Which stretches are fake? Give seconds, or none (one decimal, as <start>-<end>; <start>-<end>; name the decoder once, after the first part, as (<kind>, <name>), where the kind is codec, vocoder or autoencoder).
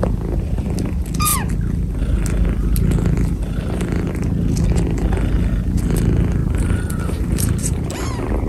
6.4-7.8 (vocoder, BigVGAN v2)